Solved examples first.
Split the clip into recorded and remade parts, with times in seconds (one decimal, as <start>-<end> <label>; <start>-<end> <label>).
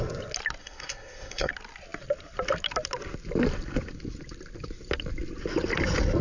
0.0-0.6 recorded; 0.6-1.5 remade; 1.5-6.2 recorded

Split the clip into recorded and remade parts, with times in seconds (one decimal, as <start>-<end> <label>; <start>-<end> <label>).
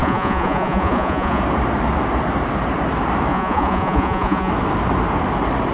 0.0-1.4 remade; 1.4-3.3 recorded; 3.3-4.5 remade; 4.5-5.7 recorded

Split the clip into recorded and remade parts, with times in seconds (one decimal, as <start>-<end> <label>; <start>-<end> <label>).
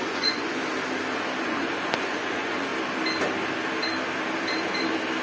0.0-0.6 remade; 0.6-1.4 recorded; 1.4-2.7 remade; 2.7-5.2 recorded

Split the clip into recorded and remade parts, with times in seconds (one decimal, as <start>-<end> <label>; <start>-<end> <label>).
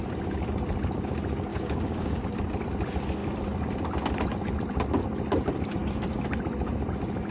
0.0-1.5 recorded; 1.5-2.2 remade; 2.2-7.3 recorded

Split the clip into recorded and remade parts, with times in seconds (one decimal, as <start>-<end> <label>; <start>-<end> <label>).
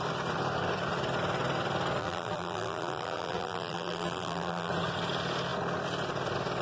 0.0-2.0 recorded; 2.0-4.7 remade; 4.7-6.6 recorded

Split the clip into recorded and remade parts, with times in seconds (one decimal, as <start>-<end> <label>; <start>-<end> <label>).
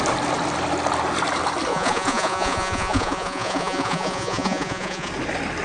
0.0-1.7 recorded; 1.7-5.1 remade; 5.1-5.6 recorded